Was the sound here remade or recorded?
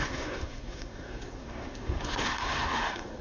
remade